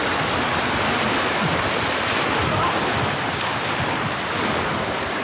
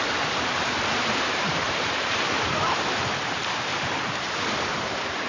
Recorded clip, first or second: first